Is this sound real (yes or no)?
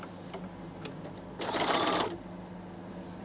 yes